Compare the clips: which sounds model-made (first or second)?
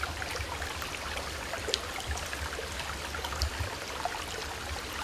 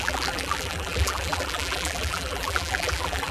second